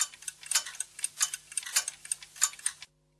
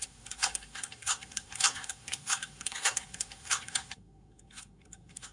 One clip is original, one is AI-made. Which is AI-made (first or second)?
second